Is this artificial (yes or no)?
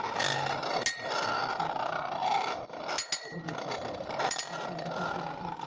no